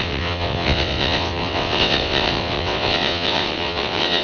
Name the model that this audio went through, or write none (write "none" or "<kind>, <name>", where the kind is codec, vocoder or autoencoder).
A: vocoder, WaveNeXt